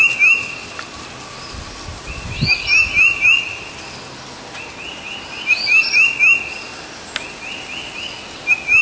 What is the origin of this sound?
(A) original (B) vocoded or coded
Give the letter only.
A